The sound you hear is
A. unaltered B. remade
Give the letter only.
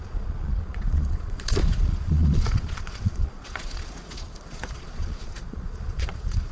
B